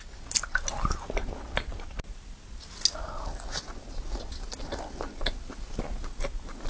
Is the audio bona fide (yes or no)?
yes